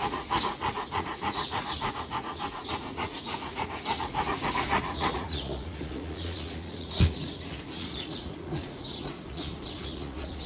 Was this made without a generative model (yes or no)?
no